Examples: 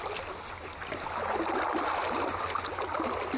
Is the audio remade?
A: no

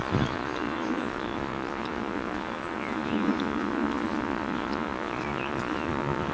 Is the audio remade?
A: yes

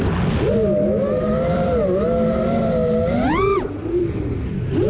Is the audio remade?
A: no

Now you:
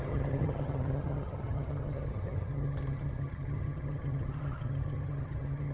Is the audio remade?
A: yes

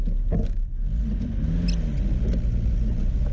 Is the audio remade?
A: no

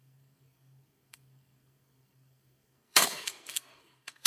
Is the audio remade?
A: yes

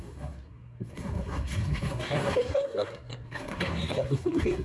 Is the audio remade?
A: yes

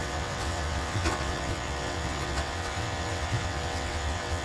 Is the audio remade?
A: yes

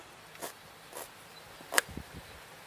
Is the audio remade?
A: no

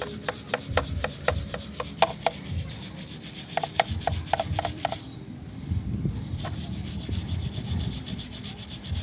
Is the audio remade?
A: yes